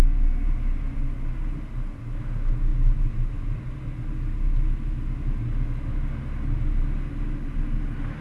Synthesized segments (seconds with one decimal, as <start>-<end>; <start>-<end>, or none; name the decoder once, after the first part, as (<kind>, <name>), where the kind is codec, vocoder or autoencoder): none